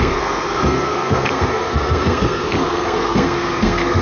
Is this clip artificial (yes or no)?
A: yes